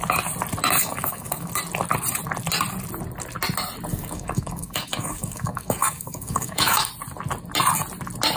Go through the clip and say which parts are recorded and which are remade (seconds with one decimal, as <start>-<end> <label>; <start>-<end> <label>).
0.0-0.8 recorded; 0.8-1.5 remade; 1.5-3.9 recorded; 3.9-6.9 remade; 6.9-8.4 recorded